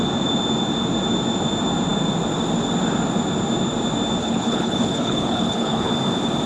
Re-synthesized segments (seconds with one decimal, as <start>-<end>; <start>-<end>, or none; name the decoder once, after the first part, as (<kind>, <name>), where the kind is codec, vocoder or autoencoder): 4.2-5.9 (codec, HILCodec)